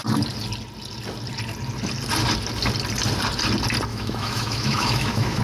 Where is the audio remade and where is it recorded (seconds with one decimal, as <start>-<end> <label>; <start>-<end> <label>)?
0.0-3.9 recorded; 3.9-5.4 remade